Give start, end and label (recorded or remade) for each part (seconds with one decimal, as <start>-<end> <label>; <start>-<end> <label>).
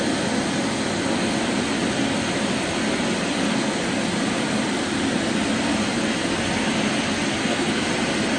0.0-7.4 recorded; 7.4-7.9 remade; 7.9-8.4 recorded